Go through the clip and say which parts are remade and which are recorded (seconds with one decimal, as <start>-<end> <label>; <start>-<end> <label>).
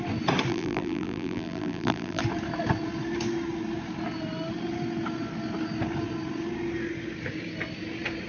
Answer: 0.0-0.5 recorded; 0.5-2.2 remade; 2.2-8.3 recorded